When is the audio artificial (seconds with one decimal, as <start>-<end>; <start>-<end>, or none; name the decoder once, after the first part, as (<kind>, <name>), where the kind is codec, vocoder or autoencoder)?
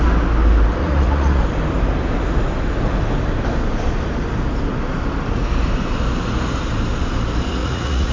0.8-1.4 (vocoder, Vocos); 7.6-8.1